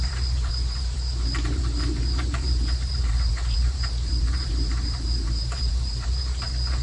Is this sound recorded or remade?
remade